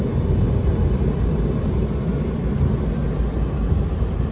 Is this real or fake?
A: real